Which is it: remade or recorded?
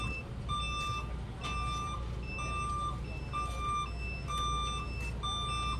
recorded